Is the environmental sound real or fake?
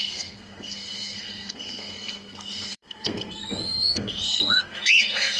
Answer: fake